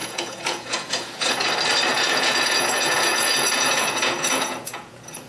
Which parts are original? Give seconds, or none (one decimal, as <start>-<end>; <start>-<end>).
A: 1.5-1.9